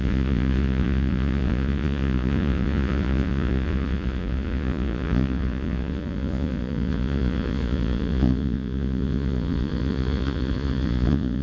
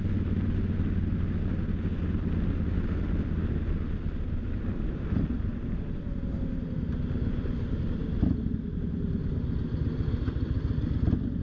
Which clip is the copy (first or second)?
first